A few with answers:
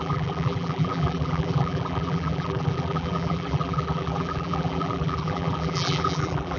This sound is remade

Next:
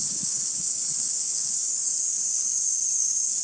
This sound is remade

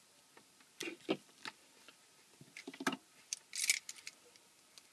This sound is recorded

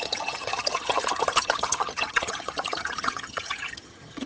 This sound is remade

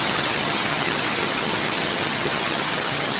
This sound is remade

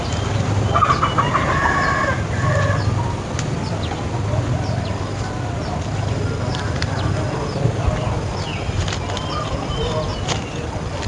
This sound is recorded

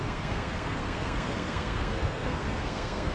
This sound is remade